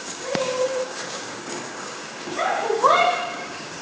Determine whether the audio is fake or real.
fake